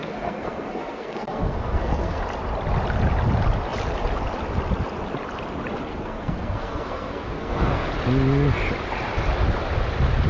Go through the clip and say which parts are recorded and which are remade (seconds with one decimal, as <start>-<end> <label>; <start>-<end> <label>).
0.0-2.2 remade; 2.2-5.9 recorded; 5.9-7.9 remade; 7.9-10.3 recorded

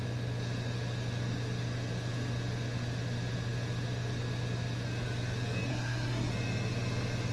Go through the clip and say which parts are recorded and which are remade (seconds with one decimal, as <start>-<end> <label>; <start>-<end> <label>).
0.0-5.7 recorded; 5.7-6.3 remade; 6.3-7.3 recorded

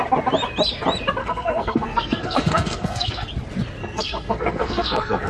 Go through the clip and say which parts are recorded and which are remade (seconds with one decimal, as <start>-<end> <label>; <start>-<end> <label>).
0.0-1.2 recorded; 1.2-3.3 remade; 3.3-3.8 recorded; 3.8-5.3 remade

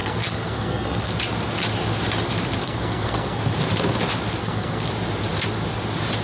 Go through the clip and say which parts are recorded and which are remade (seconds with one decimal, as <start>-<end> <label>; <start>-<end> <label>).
0.0-1.1 remade; 1.1-2.6 recorded; 2.6-3.4 remade; 3.4-4.4 recorded; 4.4-4.9 remade; 4.9-6.2 recorded

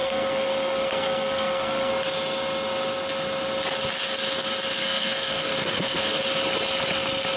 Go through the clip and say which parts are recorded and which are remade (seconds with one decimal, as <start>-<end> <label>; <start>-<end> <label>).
0.0-1.9 remade; 1.9-4.7 recorded; 4.7-6.2 remade; 6.2-7.4 recorded

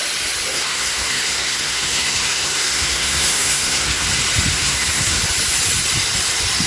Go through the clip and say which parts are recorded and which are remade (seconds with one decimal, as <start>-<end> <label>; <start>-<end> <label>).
0.0-0.5 recorded; 0.5-4.1 remade; 4.1-4.5 recorded; 4.5-5.2 remade; 5.2-6.7 recorded